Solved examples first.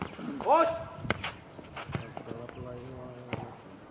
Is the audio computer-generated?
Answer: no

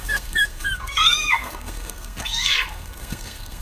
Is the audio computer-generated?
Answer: yes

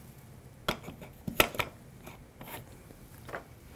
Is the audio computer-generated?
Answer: no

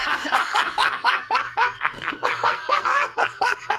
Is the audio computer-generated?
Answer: yes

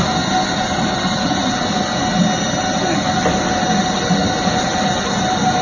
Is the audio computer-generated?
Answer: no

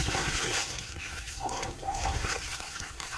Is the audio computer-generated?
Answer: yes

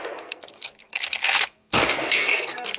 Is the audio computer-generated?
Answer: yes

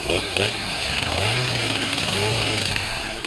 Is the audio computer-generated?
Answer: yes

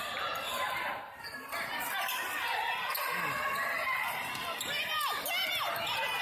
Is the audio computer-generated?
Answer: no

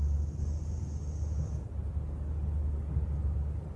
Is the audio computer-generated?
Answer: no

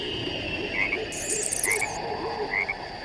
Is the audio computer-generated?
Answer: no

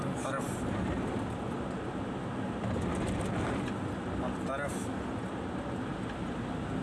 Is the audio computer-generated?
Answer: no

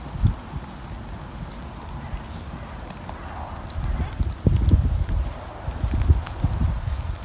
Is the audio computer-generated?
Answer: no